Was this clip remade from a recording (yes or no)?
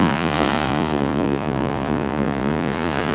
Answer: yes